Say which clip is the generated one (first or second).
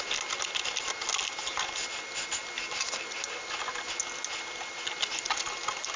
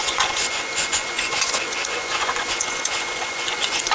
second